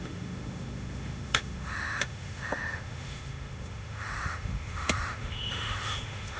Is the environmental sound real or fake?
fake